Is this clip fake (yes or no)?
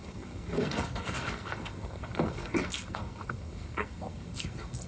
yes